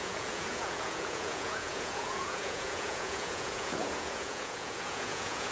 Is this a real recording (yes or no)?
no